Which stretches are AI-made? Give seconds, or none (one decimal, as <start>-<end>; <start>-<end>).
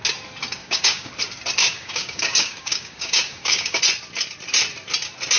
0.6-1.1; 1.6-3.8